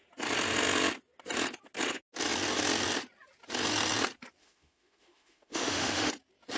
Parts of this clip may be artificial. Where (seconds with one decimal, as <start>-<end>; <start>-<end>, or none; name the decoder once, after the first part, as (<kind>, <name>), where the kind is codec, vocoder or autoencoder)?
4.4-6.1 (autoencoder, DAC-VAE)